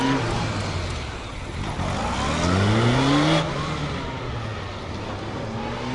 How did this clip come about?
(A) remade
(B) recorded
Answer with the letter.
B